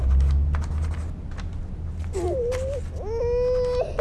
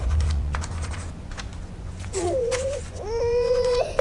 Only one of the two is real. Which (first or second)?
first